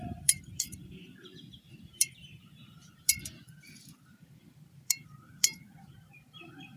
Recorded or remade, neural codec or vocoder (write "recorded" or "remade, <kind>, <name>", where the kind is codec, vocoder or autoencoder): remade, vocoder, BigVGAN v2